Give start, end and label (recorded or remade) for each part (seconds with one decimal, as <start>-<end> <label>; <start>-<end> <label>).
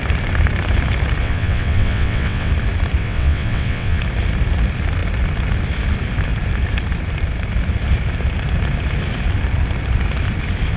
0.0-1.2 recorded; 1.2-2.5 remade; 2.5-3.0 recorded; 3.0-4.0 remade; 4.0-10.8 recorded